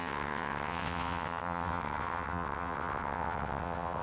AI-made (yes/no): yes